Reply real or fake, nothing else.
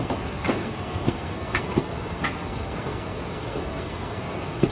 fake